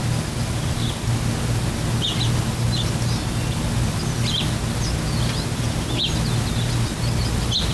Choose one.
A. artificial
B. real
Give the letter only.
B